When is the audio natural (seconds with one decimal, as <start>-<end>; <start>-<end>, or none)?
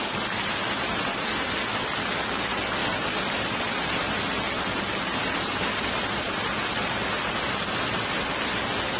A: 0.0-2.8; 4.1-5.1; 6.2-9.0